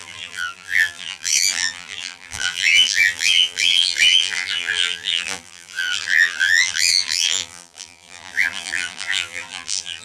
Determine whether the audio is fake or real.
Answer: fake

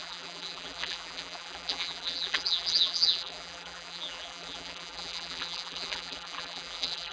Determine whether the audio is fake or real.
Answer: fake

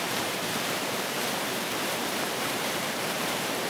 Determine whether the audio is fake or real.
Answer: fake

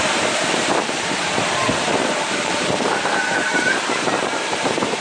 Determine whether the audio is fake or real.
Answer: fake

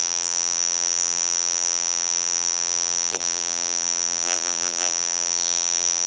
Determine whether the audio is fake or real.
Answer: fake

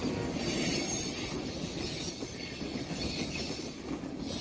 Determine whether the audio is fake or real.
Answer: fake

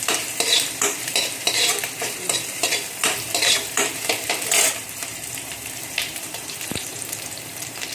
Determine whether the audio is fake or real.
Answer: fake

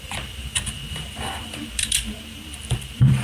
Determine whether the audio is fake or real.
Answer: fake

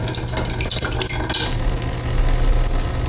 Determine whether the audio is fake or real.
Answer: real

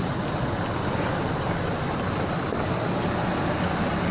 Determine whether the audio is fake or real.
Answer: real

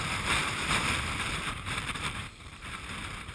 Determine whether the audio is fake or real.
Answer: fake